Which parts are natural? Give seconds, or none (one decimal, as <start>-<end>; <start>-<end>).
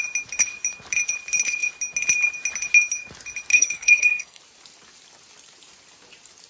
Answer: 0.0-3.5; 4.4-6.5